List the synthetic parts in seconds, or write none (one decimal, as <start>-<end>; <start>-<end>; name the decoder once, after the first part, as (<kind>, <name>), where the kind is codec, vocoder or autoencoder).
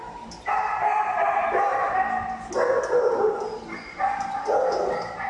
none